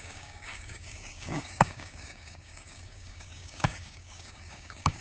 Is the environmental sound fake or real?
fake